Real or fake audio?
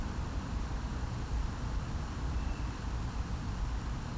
real